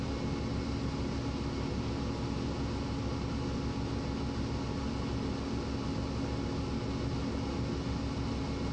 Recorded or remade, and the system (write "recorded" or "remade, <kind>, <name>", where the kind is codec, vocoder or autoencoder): recorded